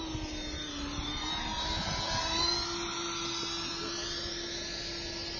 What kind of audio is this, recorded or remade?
recorded